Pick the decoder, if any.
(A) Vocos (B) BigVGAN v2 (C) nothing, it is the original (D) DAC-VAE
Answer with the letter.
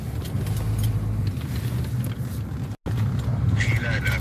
C